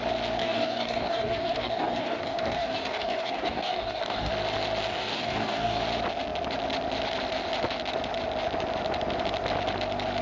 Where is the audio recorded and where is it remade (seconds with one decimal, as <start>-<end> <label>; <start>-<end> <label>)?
0.0-0.4 recorded; 0.4-4.3 remade; 4.3-4.9 recorded; 4.9-5.8 remade; 5.8-10.2 recorded